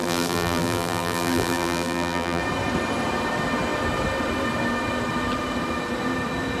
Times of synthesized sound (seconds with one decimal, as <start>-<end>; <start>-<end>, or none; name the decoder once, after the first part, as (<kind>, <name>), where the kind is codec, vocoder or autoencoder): 0.0-2.4 (vocoder, BigVGAN v2)